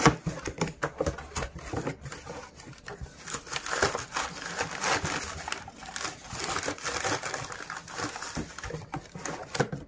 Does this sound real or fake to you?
real